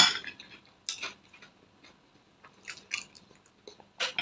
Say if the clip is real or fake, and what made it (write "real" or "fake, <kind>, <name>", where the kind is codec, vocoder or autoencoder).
real